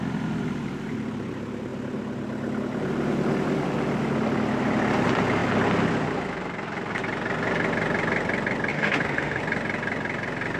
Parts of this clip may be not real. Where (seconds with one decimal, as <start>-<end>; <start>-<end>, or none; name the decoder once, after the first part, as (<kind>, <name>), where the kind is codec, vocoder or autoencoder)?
8.7-9.4 (autoencoder, DAC-VAE)